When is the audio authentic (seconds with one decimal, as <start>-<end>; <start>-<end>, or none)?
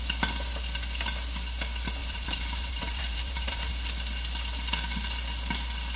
0.0-2.0; 3.7-6.0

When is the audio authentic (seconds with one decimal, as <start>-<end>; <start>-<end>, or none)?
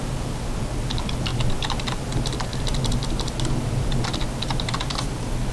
0.0-5.5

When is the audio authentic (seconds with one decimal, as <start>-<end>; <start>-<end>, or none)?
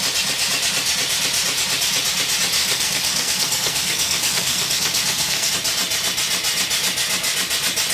0.0-2.6; 5.5-7.9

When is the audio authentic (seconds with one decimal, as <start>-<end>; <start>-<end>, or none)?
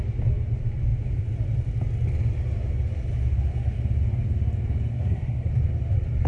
0.0-4.9; 5.5-6.3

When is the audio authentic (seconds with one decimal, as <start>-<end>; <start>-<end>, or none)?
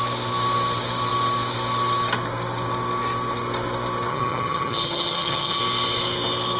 0.0-4.1; 5.6-6.6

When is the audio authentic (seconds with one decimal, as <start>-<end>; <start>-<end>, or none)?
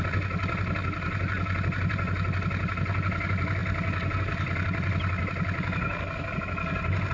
0.0-7.1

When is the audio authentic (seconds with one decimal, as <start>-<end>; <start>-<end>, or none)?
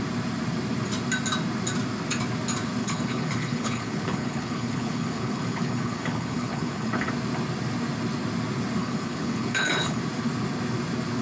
0.0-2.8; 7.1-8.8; 10.0-11.2